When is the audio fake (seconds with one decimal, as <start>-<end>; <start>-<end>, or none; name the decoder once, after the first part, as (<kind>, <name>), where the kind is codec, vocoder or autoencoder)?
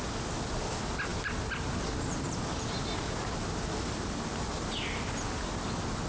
none